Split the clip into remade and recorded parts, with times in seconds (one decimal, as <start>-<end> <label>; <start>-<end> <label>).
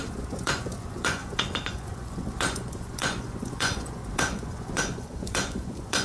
0.0-6.0 remade